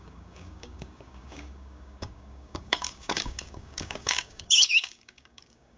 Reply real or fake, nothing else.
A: fake